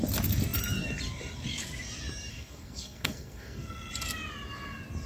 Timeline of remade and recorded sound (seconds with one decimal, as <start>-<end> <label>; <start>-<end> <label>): 0.0-2.3 recorded; 2.3-3.9 remade; 3.9-5.1 recorded